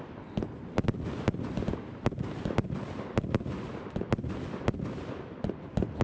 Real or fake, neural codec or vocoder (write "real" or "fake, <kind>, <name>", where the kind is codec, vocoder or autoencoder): real